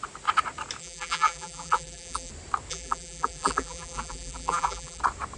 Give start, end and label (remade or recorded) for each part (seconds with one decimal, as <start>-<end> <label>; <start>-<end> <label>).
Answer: 0.0-0.8 recorded; 0.8-2.3 remade; 2.3-2.7 recorded; 2.7-5.0 remade; 5.0-5.4 recorded